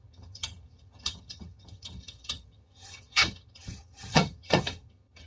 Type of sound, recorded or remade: remade